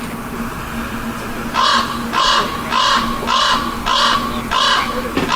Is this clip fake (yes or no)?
no